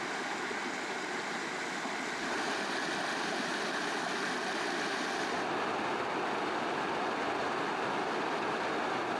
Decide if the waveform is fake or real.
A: real